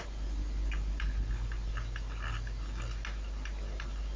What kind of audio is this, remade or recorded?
recorded